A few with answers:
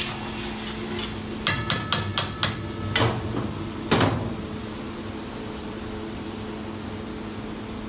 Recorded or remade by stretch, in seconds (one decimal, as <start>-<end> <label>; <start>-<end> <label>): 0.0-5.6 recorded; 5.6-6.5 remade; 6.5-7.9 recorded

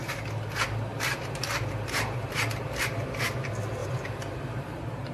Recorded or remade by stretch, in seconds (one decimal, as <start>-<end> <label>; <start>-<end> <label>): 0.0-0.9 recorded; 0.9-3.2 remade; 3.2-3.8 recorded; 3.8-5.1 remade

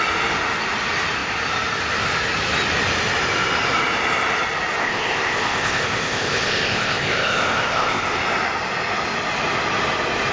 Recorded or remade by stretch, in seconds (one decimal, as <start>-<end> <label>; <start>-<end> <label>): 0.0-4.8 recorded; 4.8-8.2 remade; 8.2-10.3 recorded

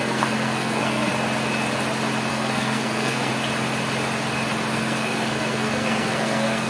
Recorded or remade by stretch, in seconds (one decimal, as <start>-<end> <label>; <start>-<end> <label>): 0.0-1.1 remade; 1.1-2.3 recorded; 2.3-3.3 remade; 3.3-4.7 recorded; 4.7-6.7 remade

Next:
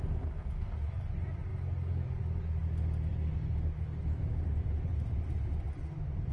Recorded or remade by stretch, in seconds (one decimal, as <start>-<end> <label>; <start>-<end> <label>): 0.0-6.3 recorded

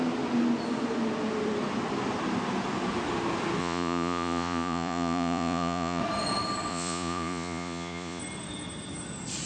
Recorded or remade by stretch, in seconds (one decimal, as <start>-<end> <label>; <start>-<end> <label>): 0.0-3.6 recorded; 3.6-6.0 remade; 6.0-6.7 recorded; 6.7-8.2 remade; 8.2-9.5 recorded